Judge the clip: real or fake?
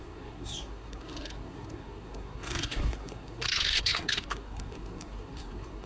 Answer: fake